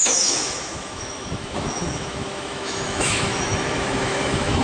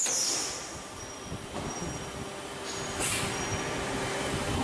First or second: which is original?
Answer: second